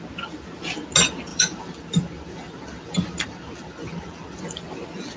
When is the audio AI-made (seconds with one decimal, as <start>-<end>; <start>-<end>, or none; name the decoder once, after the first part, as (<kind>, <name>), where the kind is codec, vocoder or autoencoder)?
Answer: 1.3-4.4 (vocoder, BigVGAN v2)